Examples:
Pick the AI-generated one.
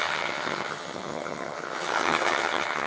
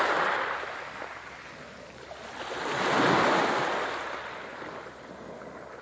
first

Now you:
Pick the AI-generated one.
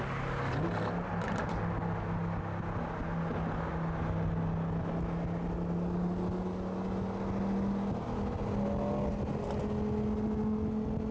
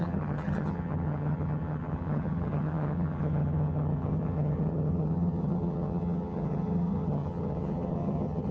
second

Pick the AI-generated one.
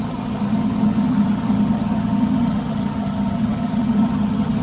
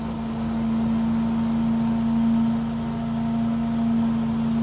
first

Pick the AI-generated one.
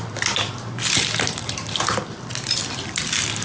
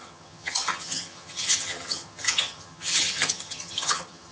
second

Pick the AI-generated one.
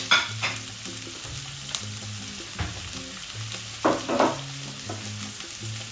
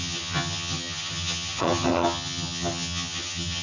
second